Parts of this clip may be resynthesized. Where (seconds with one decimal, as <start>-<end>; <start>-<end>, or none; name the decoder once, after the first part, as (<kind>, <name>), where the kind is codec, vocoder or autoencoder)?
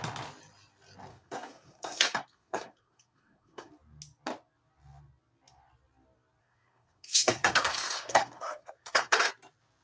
1.1-3.7 (codec, SNAC); 6.4-9.3